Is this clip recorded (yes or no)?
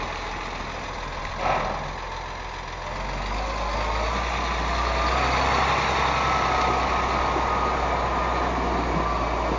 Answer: yes